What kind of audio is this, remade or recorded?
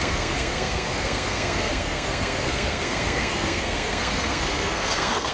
remade